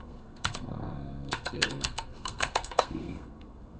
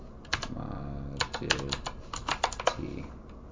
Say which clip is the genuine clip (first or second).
second